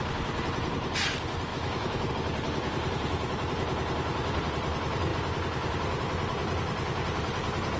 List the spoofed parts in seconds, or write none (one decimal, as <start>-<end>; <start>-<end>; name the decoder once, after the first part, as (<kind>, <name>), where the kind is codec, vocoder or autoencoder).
1.5-2.1 (autoencoder, DAC-VAE)